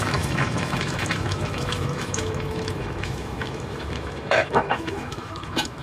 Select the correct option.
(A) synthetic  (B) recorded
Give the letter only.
A